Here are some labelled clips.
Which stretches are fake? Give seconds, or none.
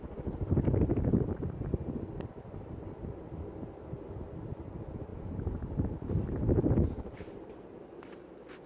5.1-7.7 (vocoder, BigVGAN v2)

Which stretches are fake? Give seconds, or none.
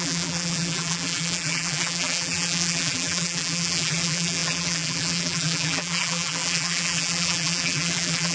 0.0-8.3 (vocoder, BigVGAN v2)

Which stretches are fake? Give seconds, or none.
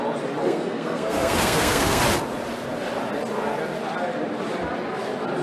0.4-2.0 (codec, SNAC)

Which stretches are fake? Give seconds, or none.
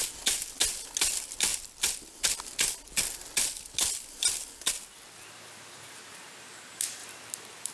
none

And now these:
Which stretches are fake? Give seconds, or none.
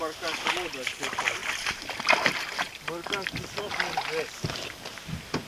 none